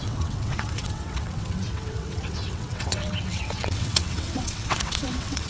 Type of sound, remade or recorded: remade